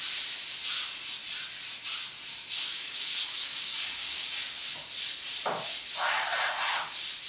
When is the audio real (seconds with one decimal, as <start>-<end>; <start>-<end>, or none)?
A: 0.0-2.3; 4.3-7.3